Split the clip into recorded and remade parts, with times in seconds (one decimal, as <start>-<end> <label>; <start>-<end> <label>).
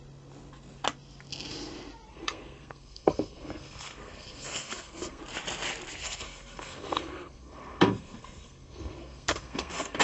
0.0-2.1 recorded; 2.1-5.2 remade; 5.2-6.0 recorded; 6.0-10.0 remade